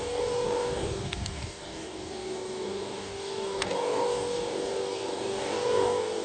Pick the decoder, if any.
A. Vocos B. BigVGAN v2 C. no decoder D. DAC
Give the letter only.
D